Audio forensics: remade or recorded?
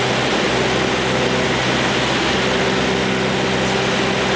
recorded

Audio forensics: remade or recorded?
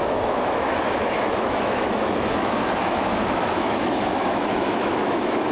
remade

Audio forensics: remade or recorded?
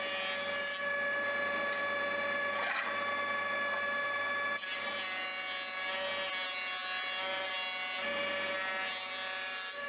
recorded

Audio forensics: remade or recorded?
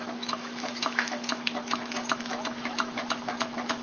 remade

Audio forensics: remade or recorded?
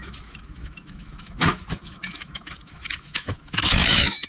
remade